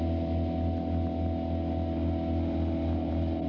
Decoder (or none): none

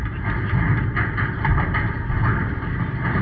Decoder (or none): none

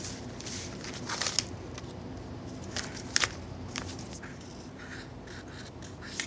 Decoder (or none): none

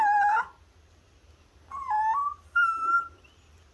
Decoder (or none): none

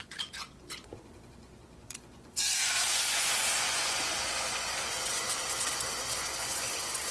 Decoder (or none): vocoder, Vocos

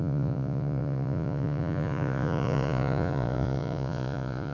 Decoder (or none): vocoder, Vocos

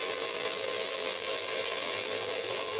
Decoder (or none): vocoder, BigVGAN v2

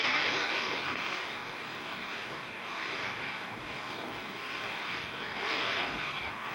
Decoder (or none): codec, DAC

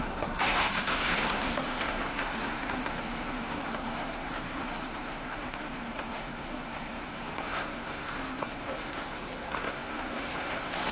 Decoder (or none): codec, SNAC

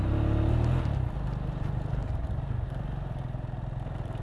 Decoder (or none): none